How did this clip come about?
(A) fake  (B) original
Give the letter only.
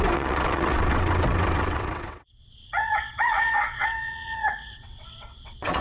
A